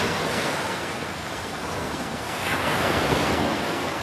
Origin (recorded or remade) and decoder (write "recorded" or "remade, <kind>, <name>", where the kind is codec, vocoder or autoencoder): remade, codec, SNAC